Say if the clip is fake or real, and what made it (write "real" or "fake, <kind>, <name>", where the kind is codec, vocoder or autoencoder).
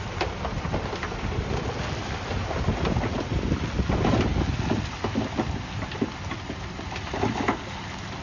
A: real